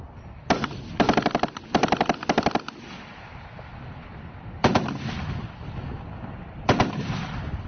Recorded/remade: recorded